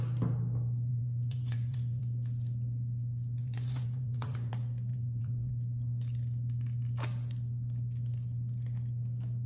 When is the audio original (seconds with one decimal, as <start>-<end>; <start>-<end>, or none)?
0.0-0.9; 2.0-3.4; 4.5-4.9; 5.5-9.5